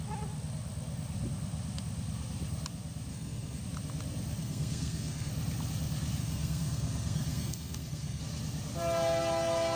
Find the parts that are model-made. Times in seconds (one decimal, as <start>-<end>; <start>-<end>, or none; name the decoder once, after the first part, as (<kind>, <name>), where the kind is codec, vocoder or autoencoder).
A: 3.1-3.6 (codec, SNAC); 4.4-5.3; 6.2-8.2